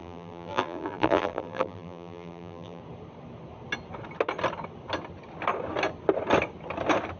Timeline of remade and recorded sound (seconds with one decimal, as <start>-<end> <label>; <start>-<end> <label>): 0.0-2.8 remade; 2.8-7.2 recorded

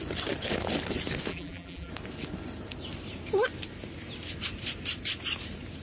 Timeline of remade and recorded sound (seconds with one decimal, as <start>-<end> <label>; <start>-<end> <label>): 0.0-1.3 recorded; 1.3-1.9 remade; 1.9-5.8 recorded

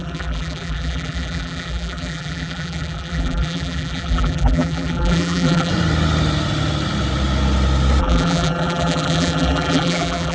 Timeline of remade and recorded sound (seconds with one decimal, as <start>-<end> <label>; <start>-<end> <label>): 0.0-5.7 remade; 5.7-8.0 recorded; 8.0-10.3 remade